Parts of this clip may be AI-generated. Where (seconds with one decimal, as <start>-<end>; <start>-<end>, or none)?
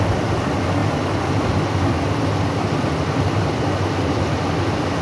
none